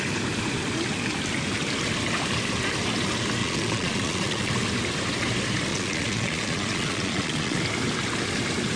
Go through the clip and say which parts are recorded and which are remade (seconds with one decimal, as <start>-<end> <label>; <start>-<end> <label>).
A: 0.0-3.4 recorded; 3.4-4.5 remade; 4.5-5.7 recorded; 5.7-7.6 remade; 7.6-8.8 recorded